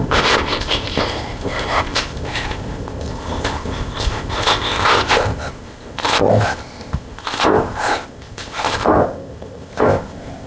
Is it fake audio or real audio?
fake